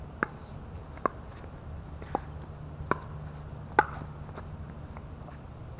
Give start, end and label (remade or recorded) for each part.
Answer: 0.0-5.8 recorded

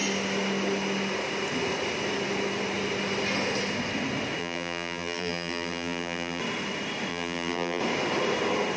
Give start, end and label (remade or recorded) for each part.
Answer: 0.0-4.4 recorded; 4.4-6.4 remade; 6.4-7.1 recorded; 7.1-7.8 remade; 7.8-8.8 recorded

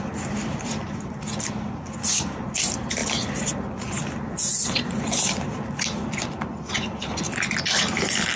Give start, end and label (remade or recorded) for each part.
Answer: 0.0-8.4 recorded

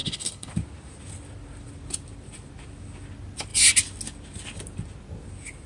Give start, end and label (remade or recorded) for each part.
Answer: 0.0-0.5 remade; 0.5-5.7 recorded